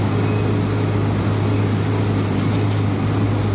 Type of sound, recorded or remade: recorded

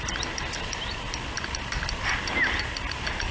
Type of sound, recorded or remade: recorded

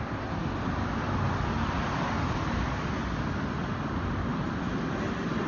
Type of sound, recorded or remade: recorded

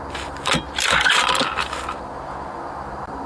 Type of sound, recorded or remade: recorded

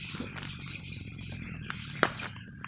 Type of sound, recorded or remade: recorded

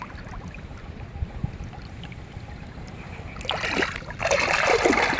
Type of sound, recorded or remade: recorded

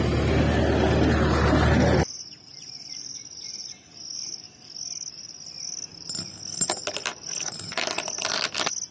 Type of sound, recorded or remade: recorded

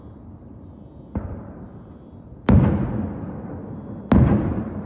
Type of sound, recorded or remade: recorded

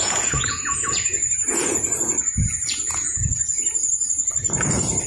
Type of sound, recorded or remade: remade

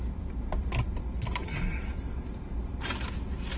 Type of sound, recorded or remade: recorded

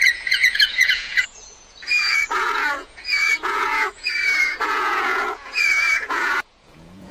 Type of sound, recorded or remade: remade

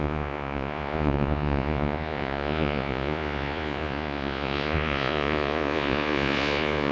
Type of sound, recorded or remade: remade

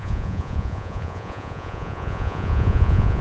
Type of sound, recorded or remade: remade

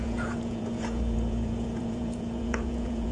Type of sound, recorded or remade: remade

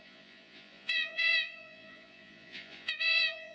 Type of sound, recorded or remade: remade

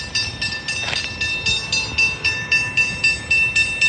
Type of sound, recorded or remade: recorded